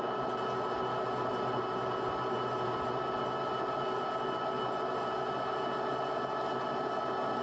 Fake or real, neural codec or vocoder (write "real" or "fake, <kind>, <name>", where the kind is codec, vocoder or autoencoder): real